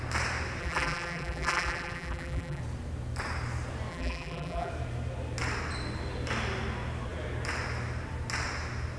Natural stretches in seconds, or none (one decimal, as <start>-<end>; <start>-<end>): 0.0-0.6; 2.6-3.9; 4.7-9.0